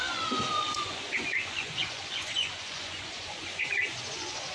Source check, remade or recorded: remade